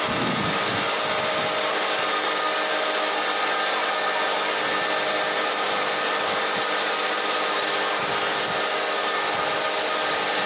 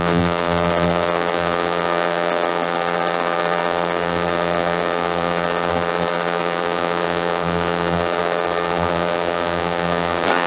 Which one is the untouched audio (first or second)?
first